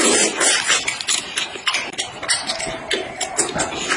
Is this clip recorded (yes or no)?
yes